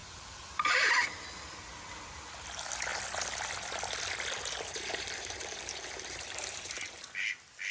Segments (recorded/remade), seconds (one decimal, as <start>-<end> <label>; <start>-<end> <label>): 0.0-0.9 remade; 0.9-4.7 recorded; 4.7-7.0 remade; 7.0-7.7 recorded